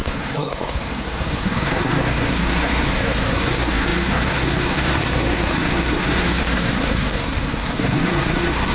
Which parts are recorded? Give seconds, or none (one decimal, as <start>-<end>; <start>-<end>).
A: none